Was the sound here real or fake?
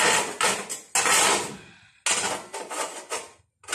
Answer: real